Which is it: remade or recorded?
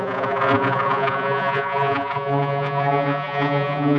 remade